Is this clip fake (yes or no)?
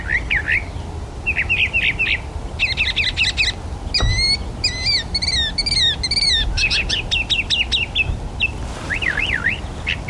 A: no